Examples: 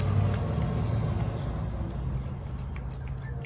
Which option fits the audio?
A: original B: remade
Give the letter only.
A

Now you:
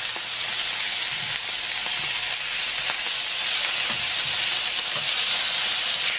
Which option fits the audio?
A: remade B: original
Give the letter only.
B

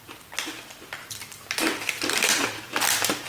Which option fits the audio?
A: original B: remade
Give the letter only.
A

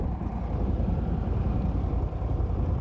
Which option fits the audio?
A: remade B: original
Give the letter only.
B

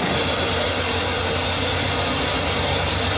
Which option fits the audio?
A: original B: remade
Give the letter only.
A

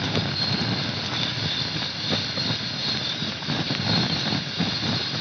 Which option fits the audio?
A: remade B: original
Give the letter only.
B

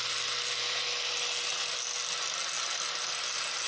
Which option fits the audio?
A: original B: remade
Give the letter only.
A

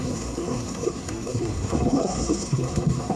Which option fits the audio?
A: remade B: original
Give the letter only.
A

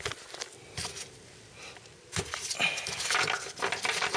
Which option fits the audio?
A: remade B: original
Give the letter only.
B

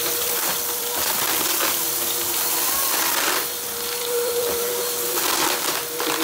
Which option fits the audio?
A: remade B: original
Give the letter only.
A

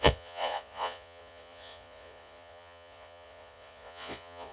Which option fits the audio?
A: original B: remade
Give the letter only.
B